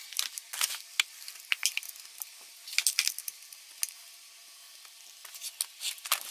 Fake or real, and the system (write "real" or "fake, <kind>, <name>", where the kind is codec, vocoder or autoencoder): real